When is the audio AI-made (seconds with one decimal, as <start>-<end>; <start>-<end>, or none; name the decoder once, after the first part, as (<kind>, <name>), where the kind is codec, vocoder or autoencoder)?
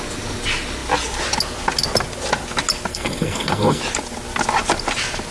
2.9-3.8 (codec, SNAC)